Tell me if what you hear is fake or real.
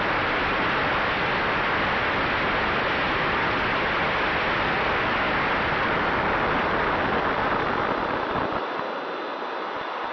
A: real